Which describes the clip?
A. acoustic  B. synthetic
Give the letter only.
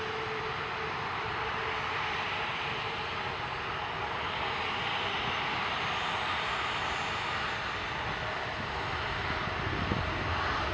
A